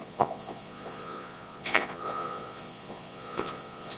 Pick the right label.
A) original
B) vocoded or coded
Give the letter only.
B